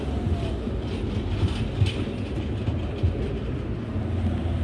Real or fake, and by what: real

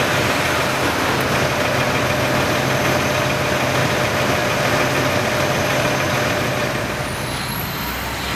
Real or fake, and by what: real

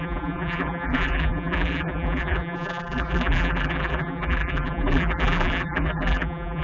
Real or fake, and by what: fake, vocoder, BigVGAN v2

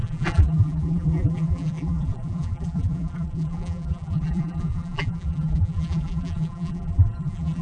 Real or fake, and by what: fake, vocoder, BigVGAN v2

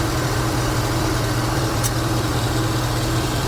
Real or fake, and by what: fake, vocoder, BigVGAN v2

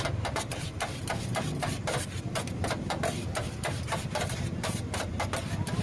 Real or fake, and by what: fake, vocoder, BigVGAN v2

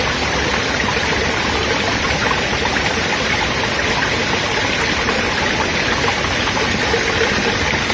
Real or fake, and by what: real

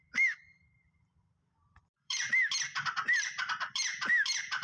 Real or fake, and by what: fake, vocoder, BigVGAN v2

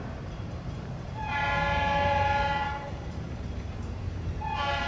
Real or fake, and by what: fake, vocoder, BigVGAN v2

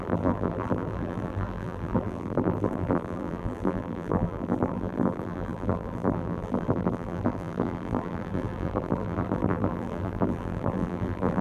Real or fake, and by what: fake, vocoder, BigVGAN v2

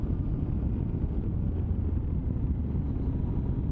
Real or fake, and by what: real